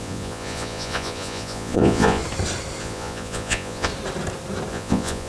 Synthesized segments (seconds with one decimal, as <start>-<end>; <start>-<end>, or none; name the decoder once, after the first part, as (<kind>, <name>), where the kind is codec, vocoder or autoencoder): 0.0-2.2 (vocoder, Vocos); 2.8-3.9; 4.7-5.3